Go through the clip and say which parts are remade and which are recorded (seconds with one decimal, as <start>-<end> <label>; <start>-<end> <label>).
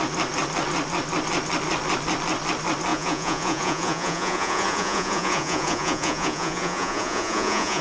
0.0-2.9 recorded; 2.9-7.8 remade